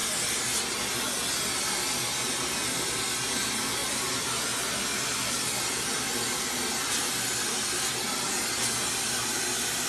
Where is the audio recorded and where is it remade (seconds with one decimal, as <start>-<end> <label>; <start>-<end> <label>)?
0.0-9.9 recorded